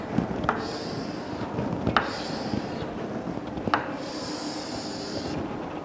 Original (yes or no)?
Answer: yes